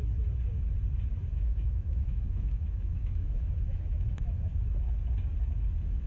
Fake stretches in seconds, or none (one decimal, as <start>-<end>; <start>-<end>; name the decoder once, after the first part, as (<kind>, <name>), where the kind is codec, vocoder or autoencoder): 1.3-4.5 (autoencoder, DAC-VAE)